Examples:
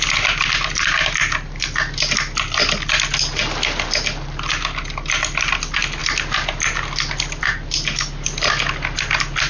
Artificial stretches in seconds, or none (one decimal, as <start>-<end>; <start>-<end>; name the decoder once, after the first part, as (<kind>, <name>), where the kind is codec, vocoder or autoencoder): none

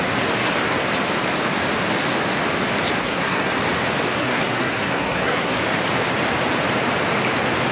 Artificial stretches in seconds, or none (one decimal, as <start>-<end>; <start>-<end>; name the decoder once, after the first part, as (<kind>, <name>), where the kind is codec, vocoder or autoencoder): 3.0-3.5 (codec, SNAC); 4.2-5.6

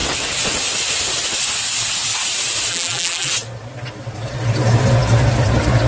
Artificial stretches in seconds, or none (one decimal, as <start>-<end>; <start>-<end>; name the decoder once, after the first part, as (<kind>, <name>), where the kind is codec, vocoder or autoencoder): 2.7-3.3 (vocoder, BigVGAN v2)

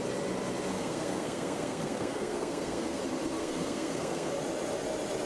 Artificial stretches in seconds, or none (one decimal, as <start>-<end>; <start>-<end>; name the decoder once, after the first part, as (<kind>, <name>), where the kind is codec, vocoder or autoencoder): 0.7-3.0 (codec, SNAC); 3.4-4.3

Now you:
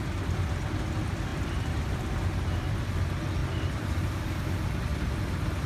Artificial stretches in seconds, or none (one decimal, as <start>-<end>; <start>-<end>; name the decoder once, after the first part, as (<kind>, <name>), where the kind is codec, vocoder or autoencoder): 1.3-2.7 (vocoder, BigVGAN v2); 3.4-4.4

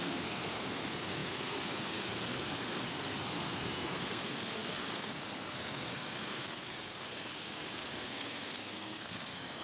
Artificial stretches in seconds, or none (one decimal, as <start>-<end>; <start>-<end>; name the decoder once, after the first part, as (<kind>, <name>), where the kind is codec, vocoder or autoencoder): 0.0-9.6 (codec, SNAC)

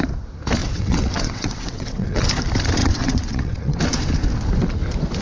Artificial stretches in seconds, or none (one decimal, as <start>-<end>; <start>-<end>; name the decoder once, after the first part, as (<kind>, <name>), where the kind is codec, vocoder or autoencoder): 0.6-2.3 (vocoder, WaveNeXt); 2.8-3.8

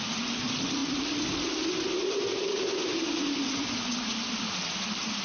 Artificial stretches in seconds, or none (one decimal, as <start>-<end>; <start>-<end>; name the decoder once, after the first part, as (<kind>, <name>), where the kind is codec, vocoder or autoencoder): none